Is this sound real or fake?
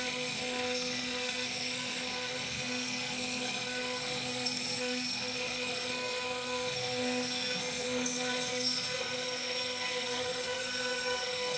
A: fake